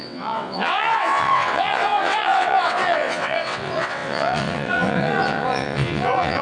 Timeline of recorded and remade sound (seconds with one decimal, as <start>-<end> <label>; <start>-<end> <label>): 0.0-6.4 remade

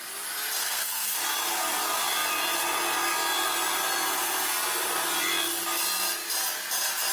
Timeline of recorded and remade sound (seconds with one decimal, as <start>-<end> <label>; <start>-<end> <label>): 0.0-0.6 recorded; 0.6-1.2 remade; 1.2-7.1 recorded

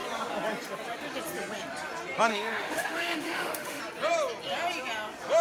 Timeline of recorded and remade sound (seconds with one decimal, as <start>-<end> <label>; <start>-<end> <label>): 0.0-2.3 recorded; 2.3-3.8 remade; 3.8-5.4 recorded

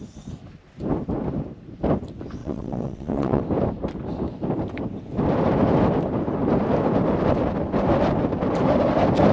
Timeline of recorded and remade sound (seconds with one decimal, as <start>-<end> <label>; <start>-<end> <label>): 0.0-2.4 recorded; 2.4-3.4 remade; 3.4-9.3 recorded

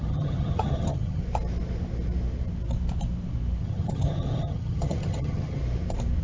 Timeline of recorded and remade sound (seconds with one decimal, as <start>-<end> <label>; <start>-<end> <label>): 0.0-1.2 remade; 1.2-3.6 recorded; 3.6-5.6 remade; 5.6-6.2 recorded

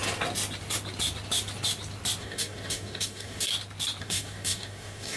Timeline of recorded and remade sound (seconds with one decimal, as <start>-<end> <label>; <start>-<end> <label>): 0.0-2.2 recorded; 2.2-3.5 remade; 3.5-4.0 recorded; 4.0-5.2 remade